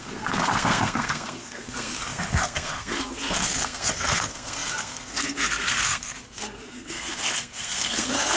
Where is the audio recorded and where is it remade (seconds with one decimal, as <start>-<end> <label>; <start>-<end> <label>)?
0.0-8.4 remade